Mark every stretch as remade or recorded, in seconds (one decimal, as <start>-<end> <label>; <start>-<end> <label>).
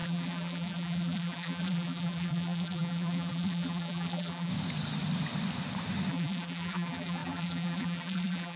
0.0-4.5 remade; 4.5-6.1 recorded; 6.1-8.6 remade